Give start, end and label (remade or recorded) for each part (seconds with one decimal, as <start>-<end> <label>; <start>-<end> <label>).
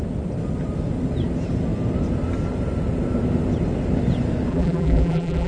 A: 0.0-4.5 recorded; 4.5-5.5 remade